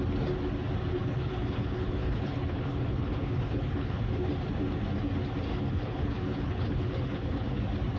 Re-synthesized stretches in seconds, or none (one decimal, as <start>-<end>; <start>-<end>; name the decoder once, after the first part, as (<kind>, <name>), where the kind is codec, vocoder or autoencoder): 1.0-4.0 (codec, HILCodec); 5.5-7.6